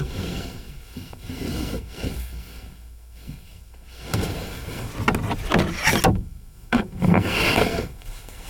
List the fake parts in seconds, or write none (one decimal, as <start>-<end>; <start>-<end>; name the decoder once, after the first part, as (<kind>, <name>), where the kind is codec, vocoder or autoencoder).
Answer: 0.0-4.9 (codec, SNAC); 6.1-8.5